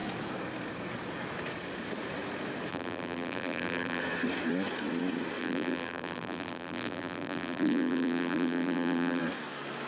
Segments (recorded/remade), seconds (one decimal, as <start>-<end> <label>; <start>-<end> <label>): 0.0-2.7 recorded; 2.7-4.0 remade; 4.0-5.4 recorded; 5.4-9.2 remade; 9.2-9.9 recorded